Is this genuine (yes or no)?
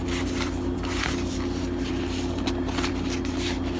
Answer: yes